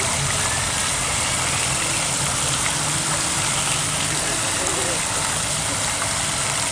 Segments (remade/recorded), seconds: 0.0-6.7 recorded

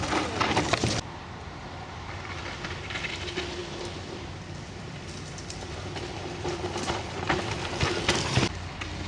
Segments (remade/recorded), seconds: 0.0-9.1 remade

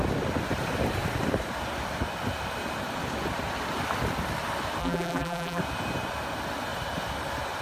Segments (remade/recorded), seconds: 0.0-4.8 recorded; 4.8-5.6 remade; 5.6-7.6 recorded

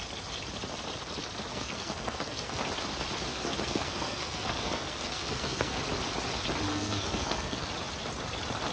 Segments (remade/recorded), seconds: 0.0-1.5 recorded; 1.5-2.6 remade; 2.6-3.3 recorded; 3.3-5.8 remade; 5.8-6.7 recorded; 6.7-7.7 remade; 7.7-8.7 recorded

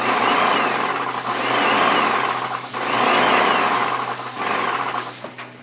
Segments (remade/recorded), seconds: 0.0-5.6 recorded

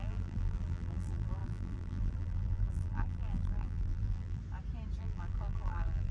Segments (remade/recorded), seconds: 0.0-4.4 remade; 4.4-5.0 recorded; 5.0-6.1 remade

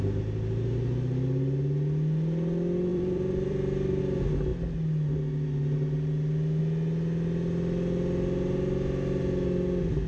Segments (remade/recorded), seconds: 0.0-2.9 recorded; 2.9-4.0 remade; 4.0-10.1 recorded

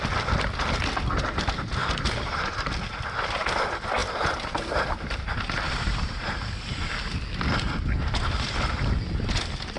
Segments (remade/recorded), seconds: 0.0-1.8 recorded; 1.8-2.7 remade; 2.7-4.0 recorded; 4.0-6.5 remade; 6.5-9.8 recorded